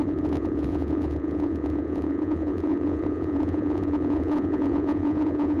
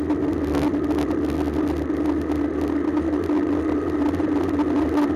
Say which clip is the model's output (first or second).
first